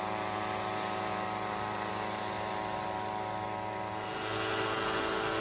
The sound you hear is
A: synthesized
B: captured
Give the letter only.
B